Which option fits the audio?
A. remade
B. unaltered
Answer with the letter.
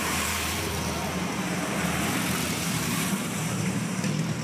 A